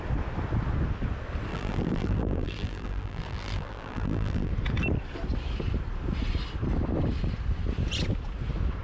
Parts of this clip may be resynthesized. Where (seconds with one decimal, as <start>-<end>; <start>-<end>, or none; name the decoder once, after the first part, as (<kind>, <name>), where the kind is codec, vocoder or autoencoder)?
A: 1.5-4.5 (vocoder, BigVGAN v2)